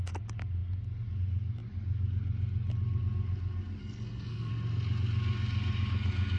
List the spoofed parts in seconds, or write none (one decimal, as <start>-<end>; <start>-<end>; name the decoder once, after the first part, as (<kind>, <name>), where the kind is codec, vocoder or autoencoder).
3.8-4.5 (codec, SNAC)